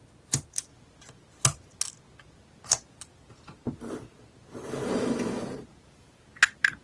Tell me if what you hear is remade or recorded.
recorded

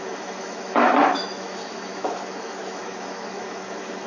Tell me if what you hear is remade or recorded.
remade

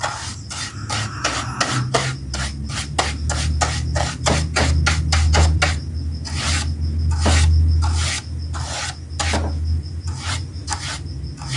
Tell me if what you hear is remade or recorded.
recorded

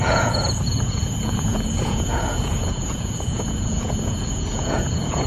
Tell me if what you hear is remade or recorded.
remade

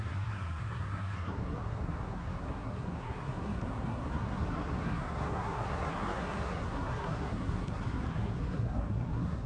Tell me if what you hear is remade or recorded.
remade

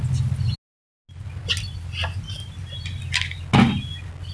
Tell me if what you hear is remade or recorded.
recorded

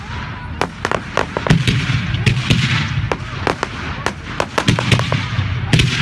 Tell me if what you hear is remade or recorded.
recorded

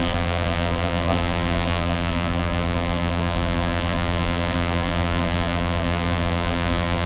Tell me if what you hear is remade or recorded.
remade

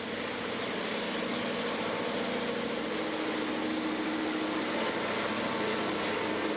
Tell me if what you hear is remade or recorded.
recorded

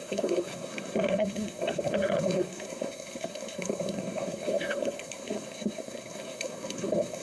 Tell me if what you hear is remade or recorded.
remade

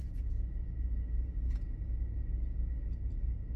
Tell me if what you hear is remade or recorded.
recorded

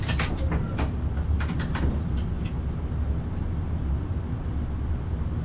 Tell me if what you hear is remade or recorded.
recorded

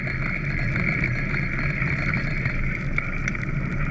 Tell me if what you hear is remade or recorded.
recorded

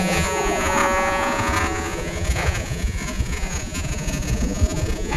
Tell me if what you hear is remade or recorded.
remade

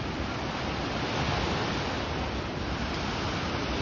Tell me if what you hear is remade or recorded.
recorded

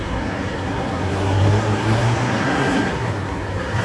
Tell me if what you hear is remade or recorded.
remade